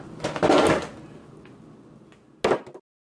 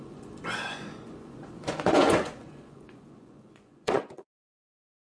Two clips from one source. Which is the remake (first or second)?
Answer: second